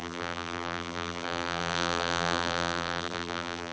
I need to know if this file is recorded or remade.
remade